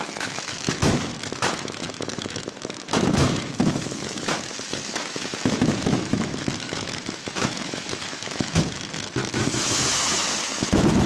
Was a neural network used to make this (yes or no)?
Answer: yes